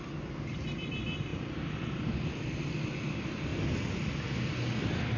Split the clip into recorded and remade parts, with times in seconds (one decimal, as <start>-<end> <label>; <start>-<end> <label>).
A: 0.0-5.2 recorded